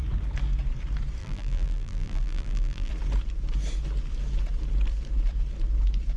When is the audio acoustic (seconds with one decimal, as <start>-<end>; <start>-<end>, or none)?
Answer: 0.0-1.2; 2.9-6.2